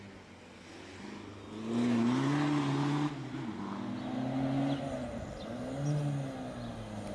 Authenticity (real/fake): real